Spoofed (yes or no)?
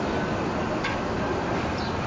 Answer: no